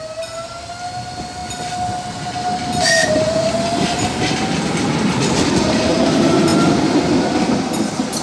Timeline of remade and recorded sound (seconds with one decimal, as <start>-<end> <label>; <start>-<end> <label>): 0.0-8.2 recorded

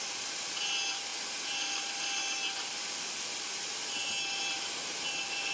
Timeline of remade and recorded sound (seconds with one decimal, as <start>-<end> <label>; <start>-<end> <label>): 0.0-5.5 recorded

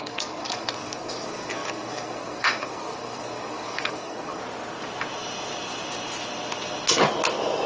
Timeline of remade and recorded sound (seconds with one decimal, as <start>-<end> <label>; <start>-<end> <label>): 0.0-4.4 remade; 4.4-7.7 recorded

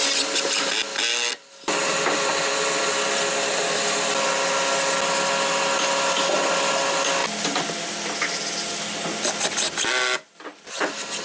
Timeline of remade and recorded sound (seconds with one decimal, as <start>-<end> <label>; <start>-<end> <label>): 0.0-11.2 recorded

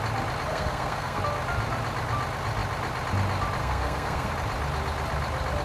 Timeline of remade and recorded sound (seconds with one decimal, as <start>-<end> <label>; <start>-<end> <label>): 0.0-0.5 recorded; 0.5-1.2 remade; 1.2-3.6 recorded; 3.6-4.3 remade; 4.3-5.6 recorded

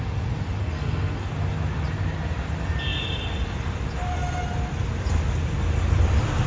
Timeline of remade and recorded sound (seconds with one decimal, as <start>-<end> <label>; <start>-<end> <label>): 0.0-0.6 recorded; 0.6-1.3 remade; 1.3-6.5 recorded

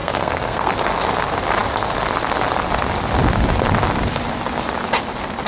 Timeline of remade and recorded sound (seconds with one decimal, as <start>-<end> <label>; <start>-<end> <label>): 0.0-0.7 remade; 0.7-5.5 recorded

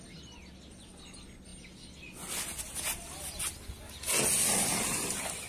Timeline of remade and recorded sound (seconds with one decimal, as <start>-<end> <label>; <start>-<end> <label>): 0.0-5.5 recorded